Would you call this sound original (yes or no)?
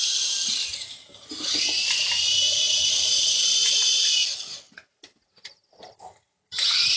yes